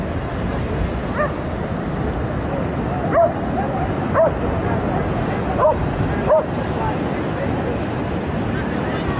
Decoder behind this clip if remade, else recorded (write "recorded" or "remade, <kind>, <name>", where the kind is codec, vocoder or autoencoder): recorded